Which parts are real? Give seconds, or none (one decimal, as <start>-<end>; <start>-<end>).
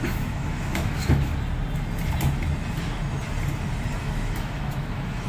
1.3-4.0